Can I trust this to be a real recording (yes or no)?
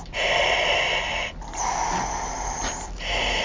yes